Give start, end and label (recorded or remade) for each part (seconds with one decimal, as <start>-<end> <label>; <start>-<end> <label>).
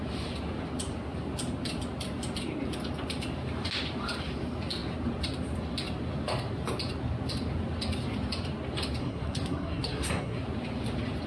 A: 0.0-9.0 recorded; 9.0-10.4 remade; 10.4-11.3 recorded